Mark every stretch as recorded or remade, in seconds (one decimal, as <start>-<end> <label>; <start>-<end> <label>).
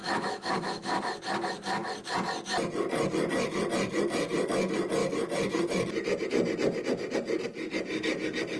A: 0.0-1.0 remade; 1.0-8.6 recorded